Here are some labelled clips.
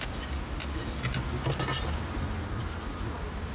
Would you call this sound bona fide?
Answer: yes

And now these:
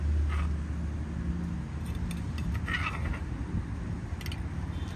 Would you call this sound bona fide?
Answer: yes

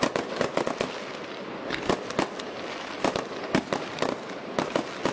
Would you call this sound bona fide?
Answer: no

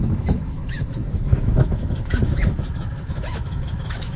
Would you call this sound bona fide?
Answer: no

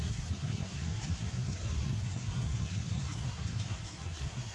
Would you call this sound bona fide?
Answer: no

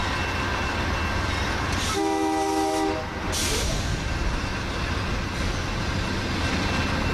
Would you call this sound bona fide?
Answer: yes